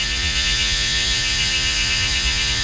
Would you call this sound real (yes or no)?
no